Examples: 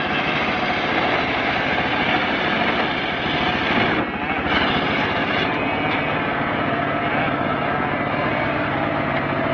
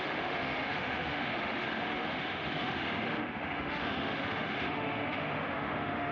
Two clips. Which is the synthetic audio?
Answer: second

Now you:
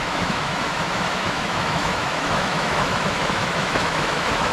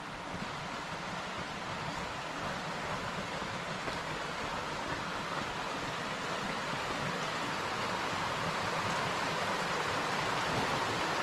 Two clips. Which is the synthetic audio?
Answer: first